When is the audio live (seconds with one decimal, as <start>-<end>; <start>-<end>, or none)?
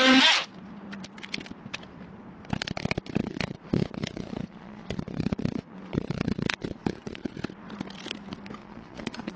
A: 0.0-3.2; 7.3-8.6